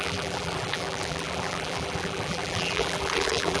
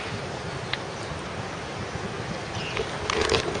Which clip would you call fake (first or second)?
first